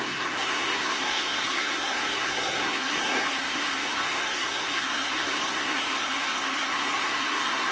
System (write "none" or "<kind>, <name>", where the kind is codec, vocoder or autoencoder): codec, SNAC